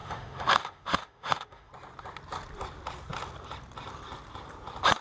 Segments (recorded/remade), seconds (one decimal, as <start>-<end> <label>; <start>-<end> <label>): 0.0-1.7 remade; 1.7-5.0 recorded